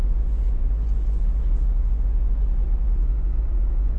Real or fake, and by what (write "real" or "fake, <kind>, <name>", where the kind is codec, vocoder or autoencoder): fake, vocoder, Vocos